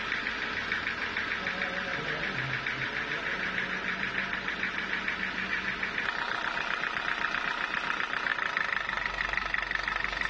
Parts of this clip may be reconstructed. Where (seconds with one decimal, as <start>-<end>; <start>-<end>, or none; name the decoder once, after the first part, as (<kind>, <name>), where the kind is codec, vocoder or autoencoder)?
none